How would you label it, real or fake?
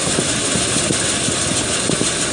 real